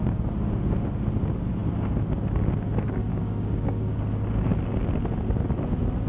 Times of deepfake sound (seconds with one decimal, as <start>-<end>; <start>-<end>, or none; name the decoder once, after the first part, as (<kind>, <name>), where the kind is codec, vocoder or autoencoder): 3.1-4.0 (codec, DAC)